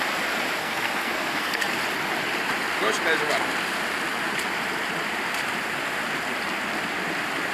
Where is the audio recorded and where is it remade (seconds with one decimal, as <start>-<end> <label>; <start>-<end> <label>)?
0.0-0.6 recorded; 0.6-1.7 remade; 1.7-7.5 recorded